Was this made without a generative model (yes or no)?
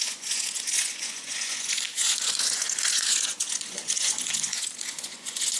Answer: no